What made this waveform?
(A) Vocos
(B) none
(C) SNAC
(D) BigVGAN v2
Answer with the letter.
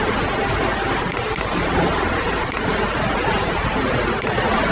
B